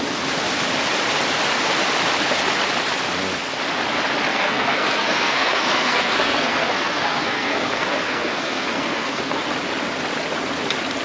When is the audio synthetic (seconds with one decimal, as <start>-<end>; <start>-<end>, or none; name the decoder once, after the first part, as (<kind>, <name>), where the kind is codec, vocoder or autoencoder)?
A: 4.3-9.4 (codec, SNAC)